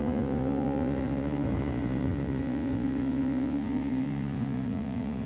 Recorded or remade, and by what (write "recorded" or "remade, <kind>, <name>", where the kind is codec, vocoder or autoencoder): remade, vocoder, Vocos